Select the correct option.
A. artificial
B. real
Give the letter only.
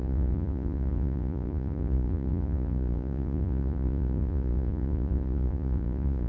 A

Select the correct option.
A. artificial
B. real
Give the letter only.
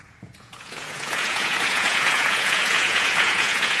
A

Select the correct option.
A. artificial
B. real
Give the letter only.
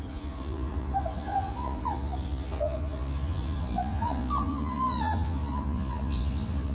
A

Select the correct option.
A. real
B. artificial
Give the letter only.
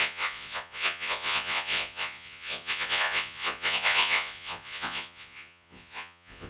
B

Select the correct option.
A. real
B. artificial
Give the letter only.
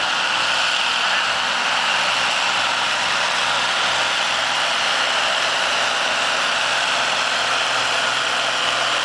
A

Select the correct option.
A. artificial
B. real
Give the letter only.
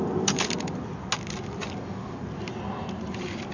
B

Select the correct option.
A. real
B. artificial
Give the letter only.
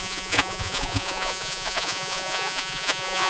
B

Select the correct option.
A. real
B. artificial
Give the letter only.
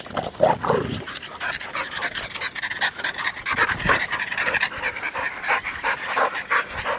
A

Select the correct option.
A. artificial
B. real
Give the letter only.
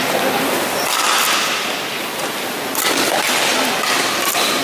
B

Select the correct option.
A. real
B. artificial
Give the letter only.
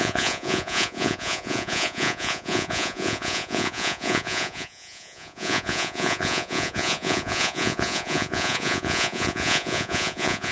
B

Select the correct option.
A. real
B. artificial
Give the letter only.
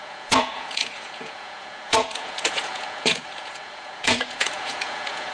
B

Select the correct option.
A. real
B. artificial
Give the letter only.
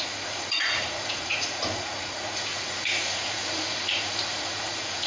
B